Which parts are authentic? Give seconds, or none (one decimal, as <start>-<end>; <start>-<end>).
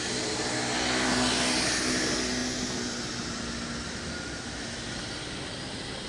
0.0-6.1